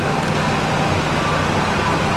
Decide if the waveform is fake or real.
real